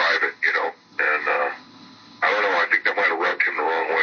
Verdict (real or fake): real